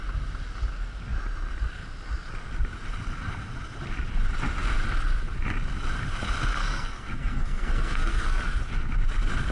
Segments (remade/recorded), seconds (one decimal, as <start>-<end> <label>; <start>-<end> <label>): 0.0-6.6 recorded; 6.6-8.4 remade; 8.4-9.5 recorded